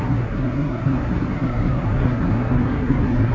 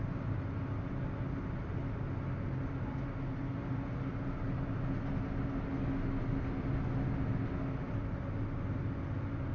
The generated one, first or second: first